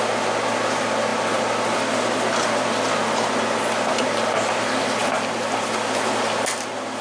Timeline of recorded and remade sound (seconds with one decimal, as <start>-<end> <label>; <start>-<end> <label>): 0.0-7.0 recorded